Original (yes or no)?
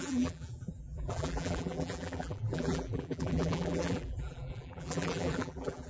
no